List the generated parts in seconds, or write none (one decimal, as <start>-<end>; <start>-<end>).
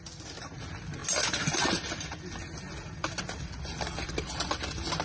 none